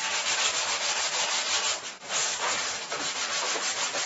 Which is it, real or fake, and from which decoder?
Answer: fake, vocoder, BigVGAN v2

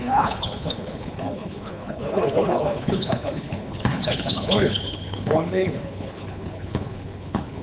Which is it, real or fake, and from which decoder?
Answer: fake, codec, HILCodec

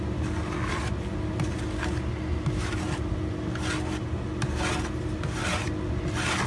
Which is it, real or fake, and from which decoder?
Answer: real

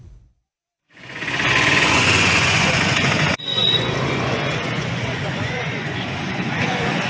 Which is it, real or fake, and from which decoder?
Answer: fake, vocoder, Vocos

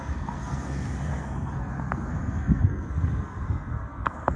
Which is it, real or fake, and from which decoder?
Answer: fake, codec, SNAC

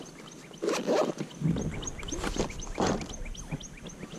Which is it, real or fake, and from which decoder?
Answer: real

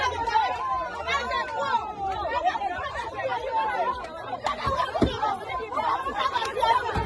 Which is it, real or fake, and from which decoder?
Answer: fake, vocoder, BigVGAN v2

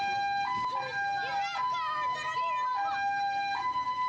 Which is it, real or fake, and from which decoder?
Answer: real